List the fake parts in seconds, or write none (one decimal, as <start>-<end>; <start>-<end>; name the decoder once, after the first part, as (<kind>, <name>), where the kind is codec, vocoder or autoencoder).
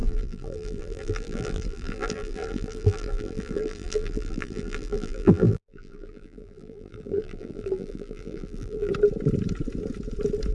0.0-8.9 (vocoder, BigVGAN v2)